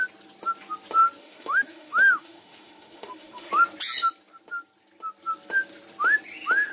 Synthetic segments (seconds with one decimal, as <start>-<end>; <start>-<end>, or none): 1.2-3.5